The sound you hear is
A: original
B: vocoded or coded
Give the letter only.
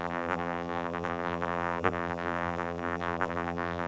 B